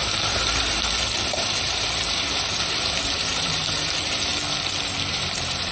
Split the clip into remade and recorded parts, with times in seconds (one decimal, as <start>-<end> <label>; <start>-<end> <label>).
0.0-4.3 remade; 4.3-5.1 recorded; 5.1-5.7 remade